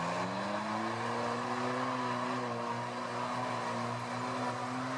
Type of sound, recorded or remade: recorded